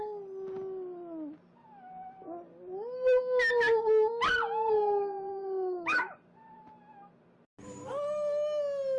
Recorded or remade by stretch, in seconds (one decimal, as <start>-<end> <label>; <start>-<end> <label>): 0.0-5.3 recorded; 5.3-6.2 remade; 6.2-9.0 recorded